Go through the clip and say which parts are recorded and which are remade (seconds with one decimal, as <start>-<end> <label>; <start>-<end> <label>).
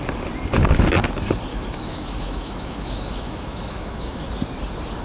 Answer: 0.0-1.5 recorded; 1.5-4.3 remade; 4.3-5.0 recorded